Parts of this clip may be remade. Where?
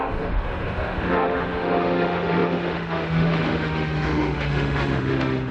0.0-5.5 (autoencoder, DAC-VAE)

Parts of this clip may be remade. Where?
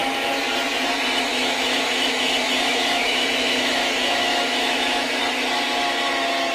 1.3-5.2 (autoencoder, DAC-VAE)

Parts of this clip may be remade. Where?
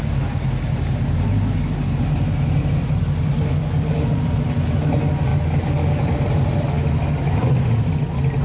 none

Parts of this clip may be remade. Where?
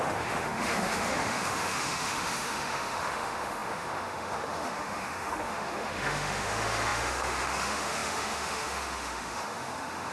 0.0-10.1 (autoencoder, DAC-VAE)